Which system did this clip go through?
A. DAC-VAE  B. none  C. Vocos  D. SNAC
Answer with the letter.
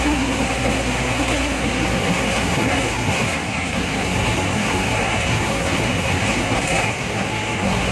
D